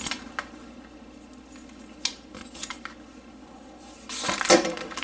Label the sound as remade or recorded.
recorded